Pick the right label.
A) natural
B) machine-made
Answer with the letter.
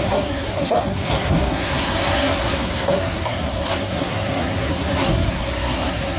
B